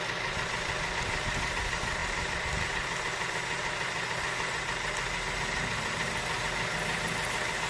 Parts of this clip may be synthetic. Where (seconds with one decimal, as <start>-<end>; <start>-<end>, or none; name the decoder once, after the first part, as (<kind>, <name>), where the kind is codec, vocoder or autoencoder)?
none